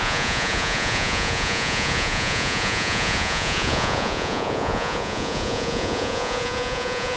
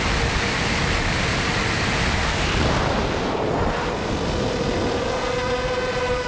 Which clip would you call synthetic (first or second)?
first